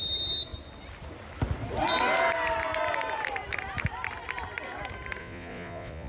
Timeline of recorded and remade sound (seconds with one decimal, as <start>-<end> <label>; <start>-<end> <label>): 0.0-5.2 recorded; 5.2-6.1 remade